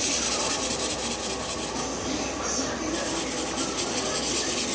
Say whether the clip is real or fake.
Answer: real